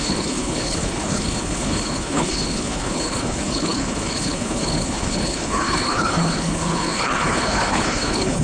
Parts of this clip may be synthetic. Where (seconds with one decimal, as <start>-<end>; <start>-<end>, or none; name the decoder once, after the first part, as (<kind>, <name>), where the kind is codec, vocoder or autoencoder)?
0.0-8.4 (codec, HILCodec)